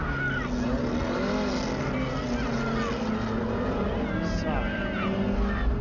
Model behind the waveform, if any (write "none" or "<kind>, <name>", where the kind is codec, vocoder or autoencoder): none